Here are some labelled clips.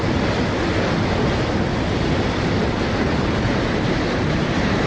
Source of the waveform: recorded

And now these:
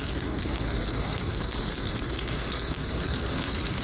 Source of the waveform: remade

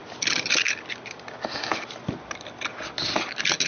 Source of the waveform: recorded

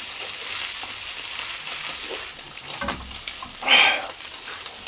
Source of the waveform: recorded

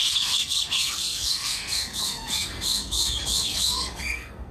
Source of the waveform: remade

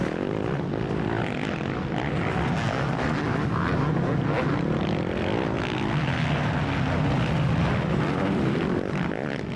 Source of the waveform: recorded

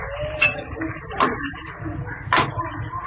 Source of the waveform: recorded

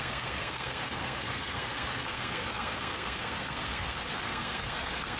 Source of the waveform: remade